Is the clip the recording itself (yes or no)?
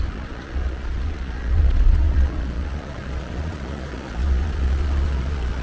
no